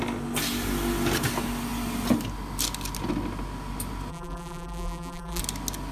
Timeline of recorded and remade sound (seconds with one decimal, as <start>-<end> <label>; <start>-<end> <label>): 0.0-4.1 recorded; 4.1-5.4 remade; 5.4-5.9 recorded